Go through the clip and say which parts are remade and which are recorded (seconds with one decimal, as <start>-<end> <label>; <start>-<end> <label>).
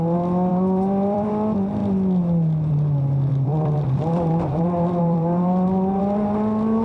0.0-0.5 recorded; 0.5-1.3 remade; 1.3-3.3 recorded; 3.3-6.0 remade; 6.0-6.8 recorded